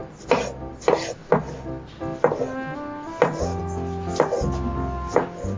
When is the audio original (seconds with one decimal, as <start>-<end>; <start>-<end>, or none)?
0.0-5.6